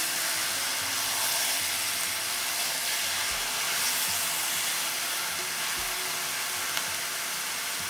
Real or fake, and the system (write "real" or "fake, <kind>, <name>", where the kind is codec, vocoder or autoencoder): real